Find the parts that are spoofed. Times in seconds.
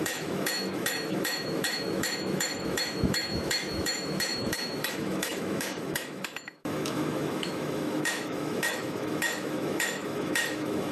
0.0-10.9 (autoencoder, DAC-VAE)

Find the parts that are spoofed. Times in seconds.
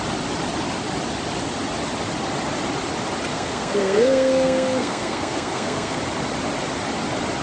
3.3-6.0 (codec, SNAC)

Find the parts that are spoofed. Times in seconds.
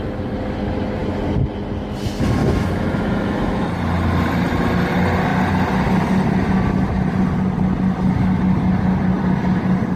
2.4-3.7 (autoencoder, DAC-VAE)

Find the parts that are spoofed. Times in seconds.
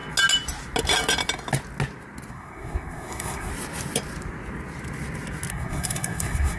2.3-3.5 (codec, SNAC); 5.5-6.6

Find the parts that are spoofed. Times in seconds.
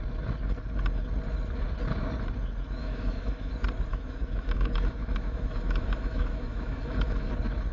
2.8-3.5 (autoencoder, DAC-VAE); 3.9-7.3